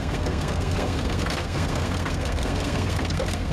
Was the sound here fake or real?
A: fake